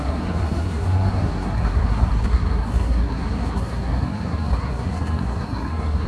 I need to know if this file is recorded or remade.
remade